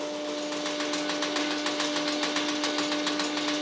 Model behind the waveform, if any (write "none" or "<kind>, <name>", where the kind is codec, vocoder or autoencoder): none